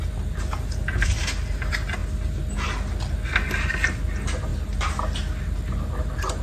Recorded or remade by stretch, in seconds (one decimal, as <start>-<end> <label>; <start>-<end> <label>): 0.0-6.4 recorded

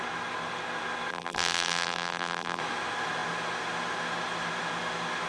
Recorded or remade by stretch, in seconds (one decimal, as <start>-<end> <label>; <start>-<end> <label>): 0.0-1.1 recorded; 1.1-2.6 remade; 2.6-5.3 recorded

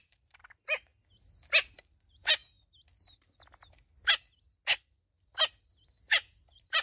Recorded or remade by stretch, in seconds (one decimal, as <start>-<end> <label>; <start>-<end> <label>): 0.0-0.9 remade; 0.9-1.7 recorded; 1.7-2.4 remade; 2.4-5.9 recorded; 5.9-6.8 remade

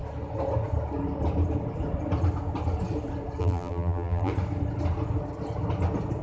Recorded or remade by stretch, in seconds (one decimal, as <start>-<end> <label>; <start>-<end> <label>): 0.0-3.4 recorded; 3.4-4.3 remade; 4.3-6.2 recorded

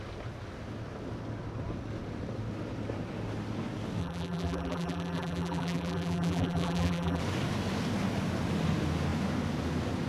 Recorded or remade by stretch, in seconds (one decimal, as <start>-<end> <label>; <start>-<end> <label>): 0.0-4.0 recorded; 4.0-7.2 remade; 7.2-10.1 recorded